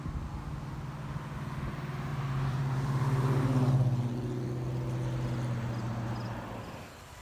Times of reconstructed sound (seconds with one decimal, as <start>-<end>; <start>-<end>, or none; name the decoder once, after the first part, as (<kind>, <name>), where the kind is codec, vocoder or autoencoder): 2.1-3.4 (vocoder, BigVGAN v2)

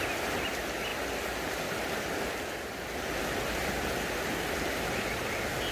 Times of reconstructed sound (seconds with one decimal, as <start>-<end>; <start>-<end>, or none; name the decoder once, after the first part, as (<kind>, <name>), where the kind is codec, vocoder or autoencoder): none

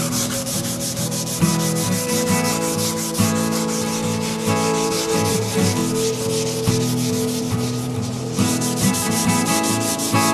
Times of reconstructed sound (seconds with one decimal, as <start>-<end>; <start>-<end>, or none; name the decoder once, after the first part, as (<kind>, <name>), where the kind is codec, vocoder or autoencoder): 0.0-1.5 (vocoder, BigVGAN v2); 5.3-5.8; 7.4-10.3

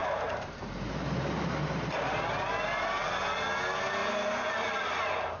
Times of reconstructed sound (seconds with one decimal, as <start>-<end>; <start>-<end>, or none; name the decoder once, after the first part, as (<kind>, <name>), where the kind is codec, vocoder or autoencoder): 0.0-0.7 (vocoder, BigVGAN v2); 1.6-2.2; 4.0-4.5

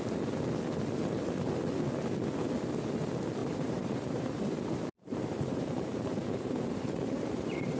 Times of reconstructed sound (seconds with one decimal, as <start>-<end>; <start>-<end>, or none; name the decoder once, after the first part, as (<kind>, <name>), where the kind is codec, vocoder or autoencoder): 3.4-7.8 (vocoder, BigVGAN v2)

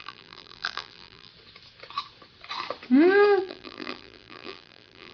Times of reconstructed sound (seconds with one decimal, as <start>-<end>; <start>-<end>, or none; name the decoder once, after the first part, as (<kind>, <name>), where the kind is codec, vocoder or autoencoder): 0.0-1.3 (vocoder, BigVGAN v2); 3.4-5.1